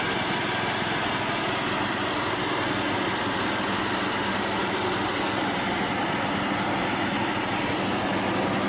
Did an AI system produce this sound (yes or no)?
no